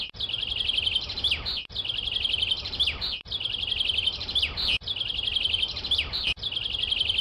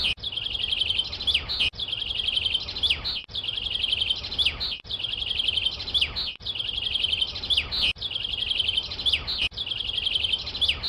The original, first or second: second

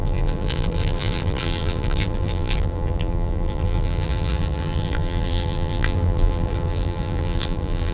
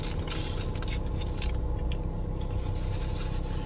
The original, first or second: second